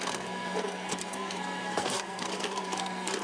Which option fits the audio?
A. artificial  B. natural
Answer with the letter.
A